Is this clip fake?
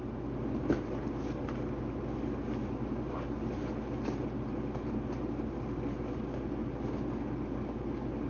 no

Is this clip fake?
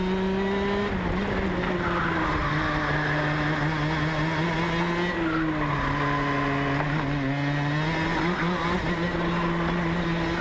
no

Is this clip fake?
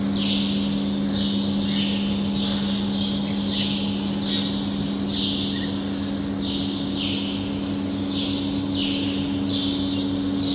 no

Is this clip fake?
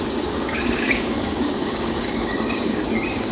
yes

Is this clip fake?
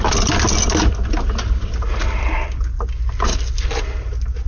no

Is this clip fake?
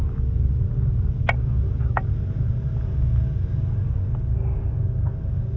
no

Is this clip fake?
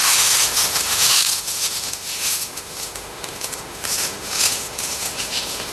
yes